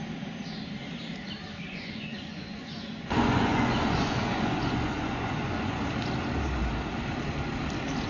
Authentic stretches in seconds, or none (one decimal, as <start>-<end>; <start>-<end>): 0.0-1.7; 5.8-8.1